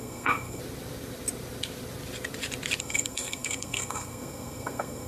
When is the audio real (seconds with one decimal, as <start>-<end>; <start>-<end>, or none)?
0.6-2.8